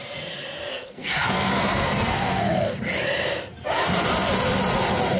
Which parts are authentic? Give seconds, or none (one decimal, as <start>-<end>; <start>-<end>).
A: 0.0-0.7; 2.8-5.2